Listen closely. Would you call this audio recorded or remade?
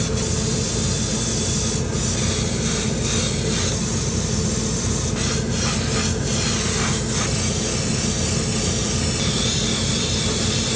recorded